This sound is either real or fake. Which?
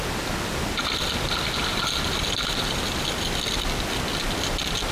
real